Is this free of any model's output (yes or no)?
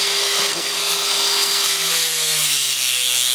no